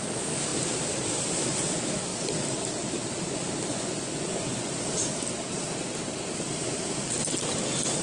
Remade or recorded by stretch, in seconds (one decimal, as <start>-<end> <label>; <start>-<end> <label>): 0.0-3.7 recorded; 3.7-4.7 remade; 4.7-8.0 recorded